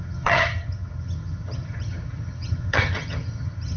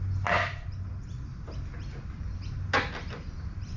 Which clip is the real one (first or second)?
second